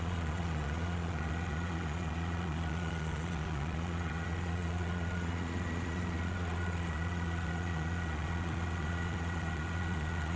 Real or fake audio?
fake